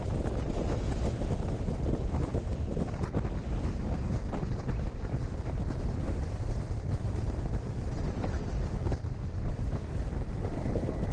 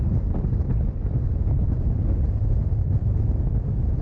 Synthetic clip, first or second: first